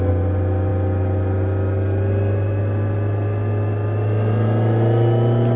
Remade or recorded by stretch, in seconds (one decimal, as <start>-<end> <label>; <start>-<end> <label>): 0.0-5.6 recorded